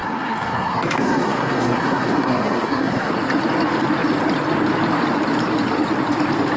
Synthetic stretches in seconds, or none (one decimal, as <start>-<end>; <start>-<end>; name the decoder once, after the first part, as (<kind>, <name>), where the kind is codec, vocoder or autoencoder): 0.0-3.1 (codec, SNAC)